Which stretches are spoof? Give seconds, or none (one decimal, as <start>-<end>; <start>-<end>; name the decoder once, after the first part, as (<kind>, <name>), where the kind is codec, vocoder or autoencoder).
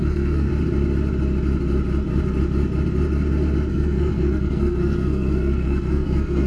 0.0-0.5 (codec, SNAC); 3.7-6.5